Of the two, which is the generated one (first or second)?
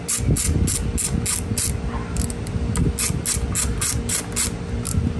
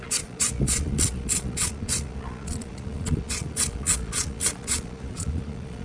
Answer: second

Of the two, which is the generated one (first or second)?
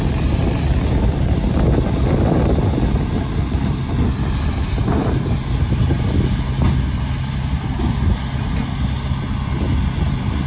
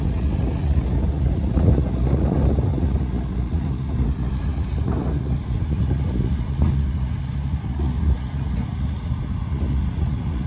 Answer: second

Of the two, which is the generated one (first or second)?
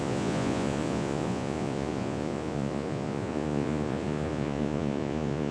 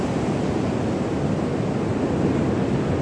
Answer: first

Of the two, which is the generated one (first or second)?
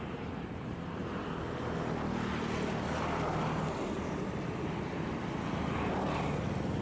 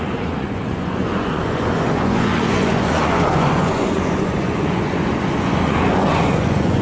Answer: second